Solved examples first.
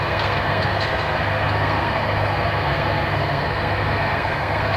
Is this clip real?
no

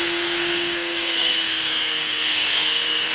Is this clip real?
no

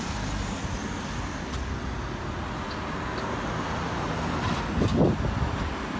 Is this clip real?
yes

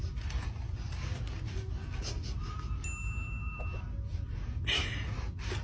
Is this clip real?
yes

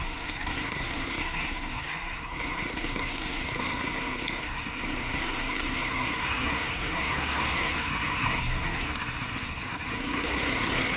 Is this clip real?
no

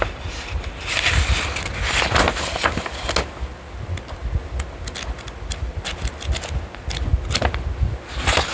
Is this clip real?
yes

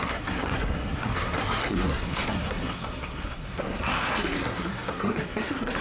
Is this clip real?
no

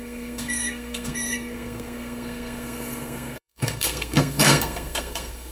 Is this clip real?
no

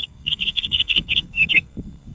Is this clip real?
no